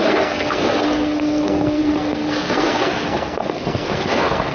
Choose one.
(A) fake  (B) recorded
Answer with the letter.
A